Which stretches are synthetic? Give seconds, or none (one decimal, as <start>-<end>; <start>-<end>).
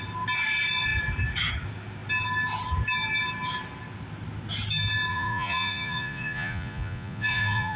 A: 5.1-7.8